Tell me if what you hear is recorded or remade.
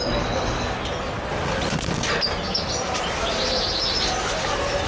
recorded